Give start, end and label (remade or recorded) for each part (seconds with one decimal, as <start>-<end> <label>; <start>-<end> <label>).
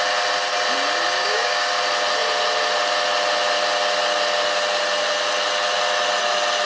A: 0.0-1.2 recorded; 1.2-1.8 remade; 1.8-6.7 recorded